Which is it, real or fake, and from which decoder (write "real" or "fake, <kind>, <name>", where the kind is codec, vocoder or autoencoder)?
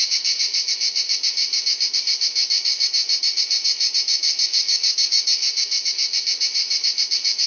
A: fake, autoencoder, DAC-VAE